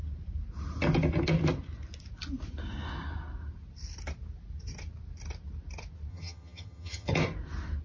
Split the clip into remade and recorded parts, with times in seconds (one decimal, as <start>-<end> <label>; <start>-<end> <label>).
0.0-6.1 recorded; 6.1-7.1 remade; 7.1-7.8 recorded